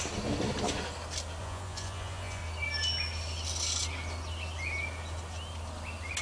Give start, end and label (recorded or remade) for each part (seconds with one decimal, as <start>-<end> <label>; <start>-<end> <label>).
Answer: 0.0-1.4 recorded; 1.4-2.4 remade; 2.4-6.2 recorded